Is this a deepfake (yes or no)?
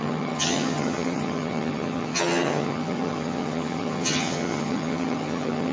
yes